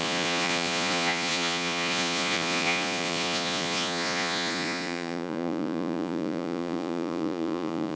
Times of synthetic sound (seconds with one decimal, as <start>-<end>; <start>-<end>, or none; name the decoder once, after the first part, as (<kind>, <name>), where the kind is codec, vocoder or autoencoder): 0.0-8.0 (vocoder, Vocos)